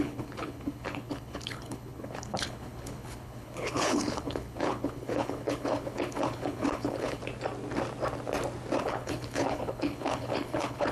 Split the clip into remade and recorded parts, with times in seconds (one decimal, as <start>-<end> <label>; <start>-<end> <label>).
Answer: 0.0-7.2 remade; 7.2-8.8 recorded; 8.8-10.9 remade